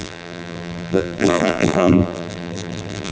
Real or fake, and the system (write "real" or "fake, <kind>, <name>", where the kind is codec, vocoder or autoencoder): fake, vocoder, BigVGAN v2